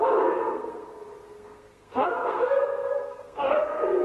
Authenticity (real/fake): fake